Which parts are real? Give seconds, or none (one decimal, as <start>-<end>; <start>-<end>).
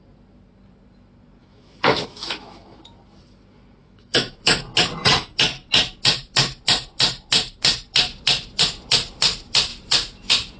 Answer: 0.0-1.4; 2.8-3.8; 4.6-10.6